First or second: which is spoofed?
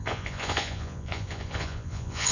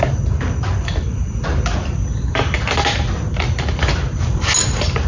first